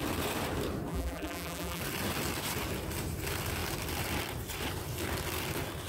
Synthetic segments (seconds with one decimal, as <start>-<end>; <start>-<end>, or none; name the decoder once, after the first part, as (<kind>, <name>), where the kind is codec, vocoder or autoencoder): 0.9-1.8 (vocoder, BigVGAN v2)